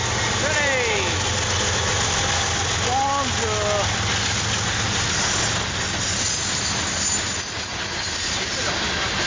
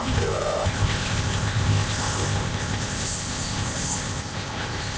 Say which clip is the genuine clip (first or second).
first